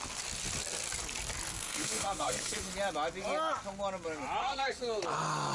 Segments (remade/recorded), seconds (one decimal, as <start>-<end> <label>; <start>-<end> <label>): 0.0-1.5 recorded; 1.5-2.7 remade; 2.7-4.4 recorded; 4.4-5.0 remade; 5.0-5.5 recorded